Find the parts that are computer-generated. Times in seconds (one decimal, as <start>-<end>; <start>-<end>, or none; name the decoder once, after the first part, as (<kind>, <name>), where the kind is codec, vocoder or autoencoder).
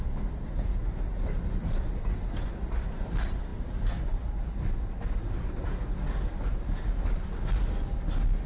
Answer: none